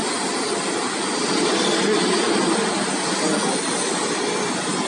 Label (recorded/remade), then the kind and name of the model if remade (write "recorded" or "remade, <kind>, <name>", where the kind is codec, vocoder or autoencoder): recorded